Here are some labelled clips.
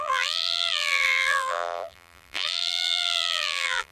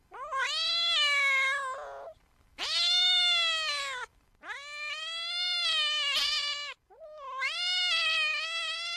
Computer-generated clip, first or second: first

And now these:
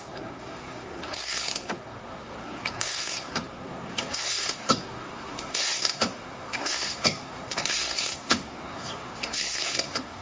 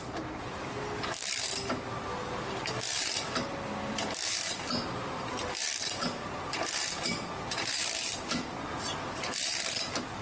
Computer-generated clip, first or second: first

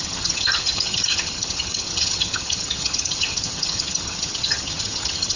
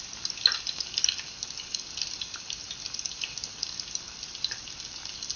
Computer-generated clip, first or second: first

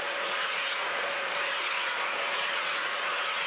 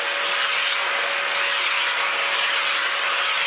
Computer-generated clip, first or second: first